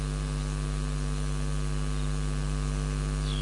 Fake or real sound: real